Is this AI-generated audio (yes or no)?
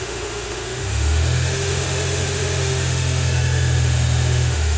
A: yes